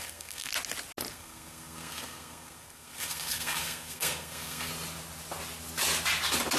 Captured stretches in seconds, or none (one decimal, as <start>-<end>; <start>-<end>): 0.5-1.1; 4.7-6.6

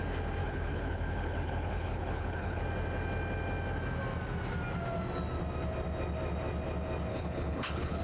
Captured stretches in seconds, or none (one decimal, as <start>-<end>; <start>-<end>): 0.0-0.4; 2.6-7.1

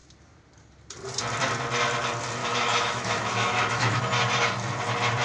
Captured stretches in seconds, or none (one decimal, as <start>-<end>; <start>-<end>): 0.0-2.4; 4.0-5.2

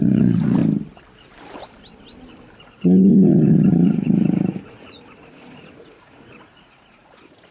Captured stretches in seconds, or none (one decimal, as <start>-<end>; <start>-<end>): 0.6-2.6

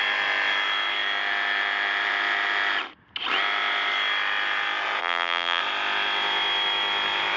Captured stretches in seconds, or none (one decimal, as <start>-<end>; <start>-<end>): 0.0-5.0; 5.6-7.4

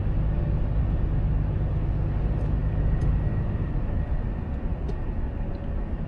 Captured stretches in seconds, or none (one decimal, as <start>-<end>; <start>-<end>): 0.0-6.1

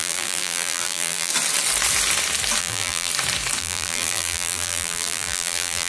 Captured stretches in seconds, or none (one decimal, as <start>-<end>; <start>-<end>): 1.3-2.6; 3.1-3.6

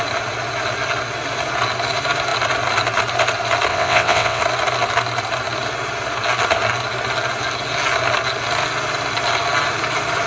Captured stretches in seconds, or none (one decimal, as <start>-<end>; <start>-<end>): 0.0-3.7; 4.4-10.3